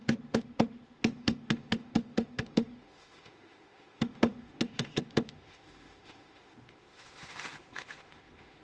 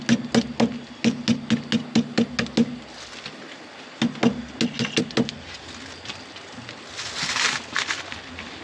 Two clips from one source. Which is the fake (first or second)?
first